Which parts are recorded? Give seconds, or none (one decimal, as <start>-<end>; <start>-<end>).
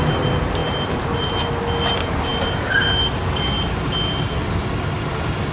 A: 0.0-5.5